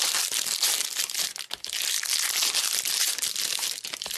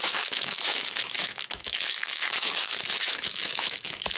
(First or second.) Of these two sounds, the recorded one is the first